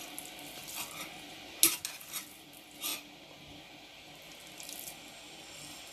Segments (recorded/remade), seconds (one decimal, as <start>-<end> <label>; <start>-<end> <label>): 0.0-5.9 recorded